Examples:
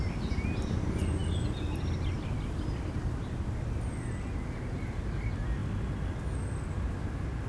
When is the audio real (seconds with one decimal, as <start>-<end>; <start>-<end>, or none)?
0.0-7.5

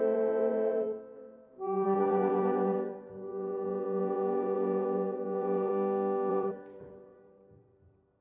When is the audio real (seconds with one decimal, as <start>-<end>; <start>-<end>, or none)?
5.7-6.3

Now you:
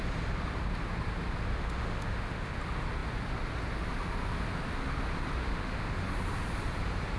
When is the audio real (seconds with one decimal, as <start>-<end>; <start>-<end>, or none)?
0.0-1.5; 2.6-5.4; 6.0-7.2

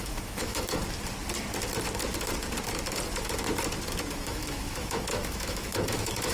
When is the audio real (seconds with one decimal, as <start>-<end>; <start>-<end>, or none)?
0.8-4.1